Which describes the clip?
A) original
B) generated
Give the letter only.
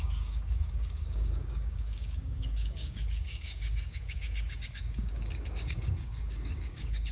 B